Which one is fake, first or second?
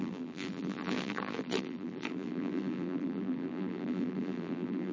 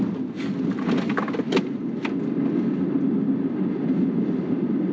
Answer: first